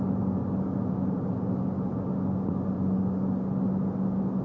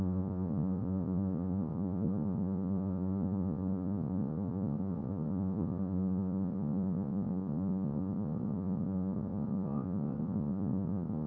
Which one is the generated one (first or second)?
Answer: second